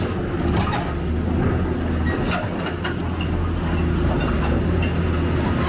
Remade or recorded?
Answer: recorded